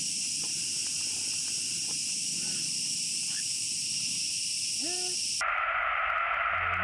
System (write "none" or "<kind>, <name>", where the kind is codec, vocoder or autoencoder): none